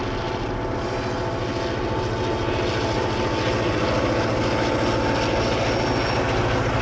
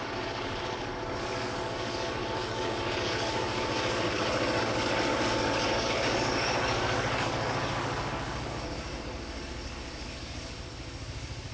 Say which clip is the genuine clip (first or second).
first